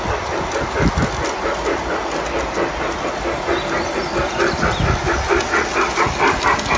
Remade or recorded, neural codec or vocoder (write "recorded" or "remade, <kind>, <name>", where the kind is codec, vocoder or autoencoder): recorded